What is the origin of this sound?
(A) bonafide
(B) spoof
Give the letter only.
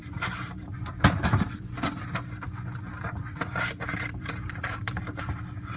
B